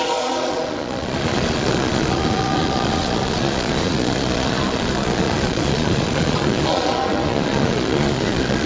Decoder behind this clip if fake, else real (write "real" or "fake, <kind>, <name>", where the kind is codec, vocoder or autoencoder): fake, vocoder, Vocos